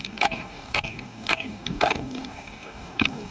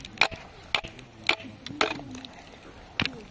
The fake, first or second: first